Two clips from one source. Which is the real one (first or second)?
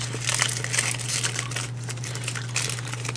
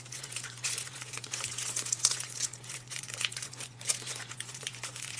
first